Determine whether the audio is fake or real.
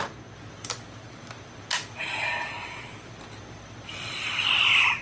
real